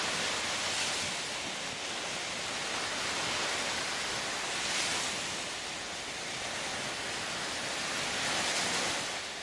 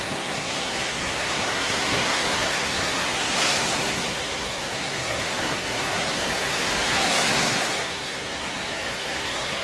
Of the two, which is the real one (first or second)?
first